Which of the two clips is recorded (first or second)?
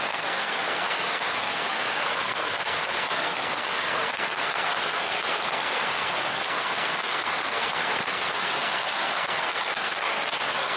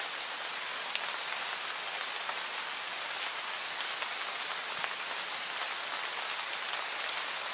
second